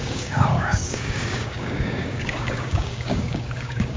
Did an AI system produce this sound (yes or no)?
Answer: yes